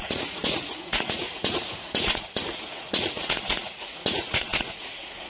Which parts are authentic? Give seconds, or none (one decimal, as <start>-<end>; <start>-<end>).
none